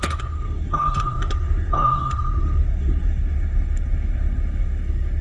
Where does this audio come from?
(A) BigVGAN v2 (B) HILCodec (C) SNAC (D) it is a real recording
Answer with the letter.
C